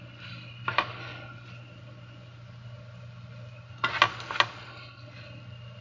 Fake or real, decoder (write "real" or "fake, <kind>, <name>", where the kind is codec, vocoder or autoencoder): real